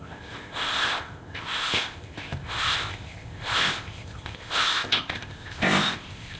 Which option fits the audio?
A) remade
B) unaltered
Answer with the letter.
A